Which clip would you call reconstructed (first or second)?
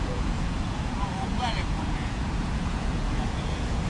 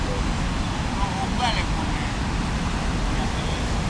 first